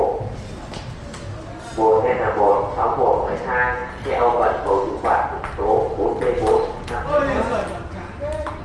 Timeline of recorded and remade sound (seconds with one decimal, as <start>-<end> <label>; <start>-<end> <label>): 0.0-8.6 recorded